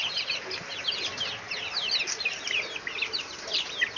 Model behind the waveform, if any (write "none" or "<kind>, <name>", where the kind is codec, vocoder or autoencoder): none